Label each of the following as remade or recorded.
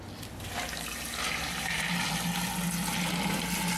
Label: recorded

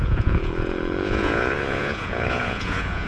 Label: remade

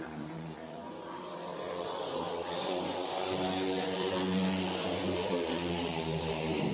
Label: remade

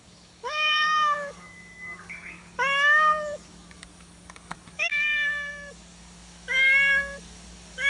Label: remade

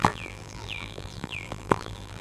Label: remade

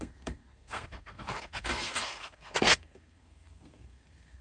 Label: remade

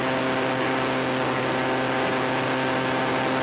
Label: recorded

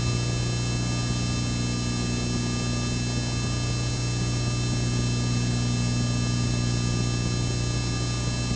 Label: recorded